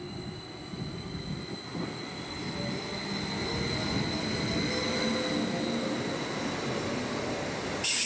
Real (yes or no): yes